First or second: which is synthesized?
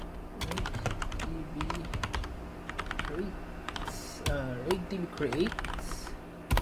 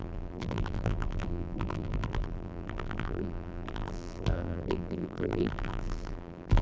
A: second